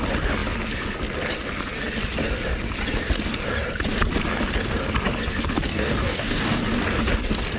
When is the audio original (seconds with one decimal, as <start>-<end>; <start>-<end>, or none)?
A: 0.0-5.7; 6.6-7.6